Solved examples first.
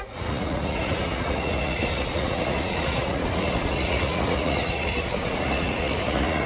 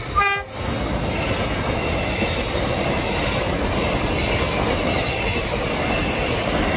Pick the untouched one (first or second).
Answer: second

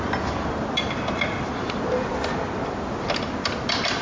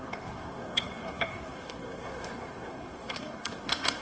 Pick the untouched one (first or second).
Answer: first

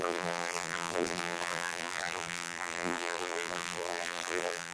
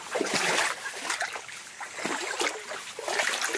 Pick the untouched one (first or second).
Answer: second